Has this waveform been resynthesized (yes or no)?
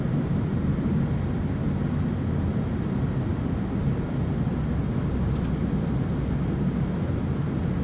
no